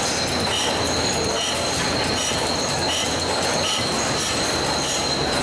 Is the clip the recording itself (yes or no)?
yes